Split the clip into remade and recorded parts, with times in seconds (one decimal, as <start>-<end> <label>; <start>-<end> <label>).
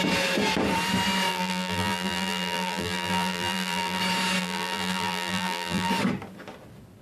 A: 0.0-1.3 recorded; 1.3-4.0 remade; 4.0-4.4 recorded; 4.4-5.9 remade; 5.9-7.0 recorded